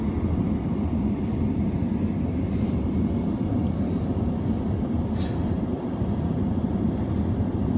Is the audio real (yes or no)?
yes